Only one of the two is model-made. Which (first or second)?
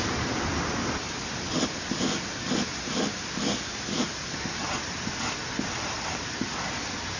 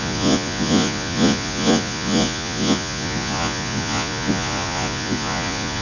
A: second